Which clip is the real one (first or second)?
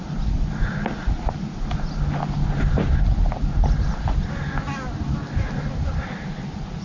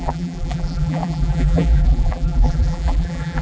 first